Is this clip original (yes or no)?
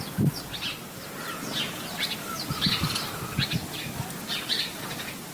yes